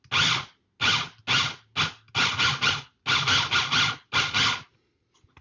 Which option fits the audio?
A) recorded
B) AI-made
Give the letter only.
A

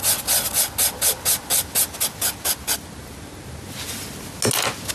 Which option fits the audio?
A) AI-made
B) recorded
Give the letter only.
B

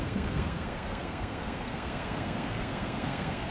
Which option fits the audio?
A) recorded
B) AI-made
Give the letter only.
B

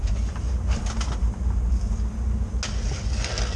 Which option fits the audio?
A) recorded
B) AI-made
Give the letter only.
A